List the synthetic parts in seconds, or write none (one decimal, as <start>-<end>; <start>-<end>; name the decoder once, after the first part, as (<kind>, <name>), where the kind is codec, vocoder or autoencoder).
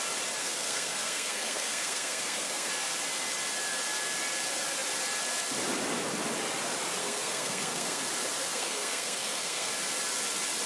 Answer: 0.4-2.7 (codec, SNAC); 7.0-8.0; 8.5-9.7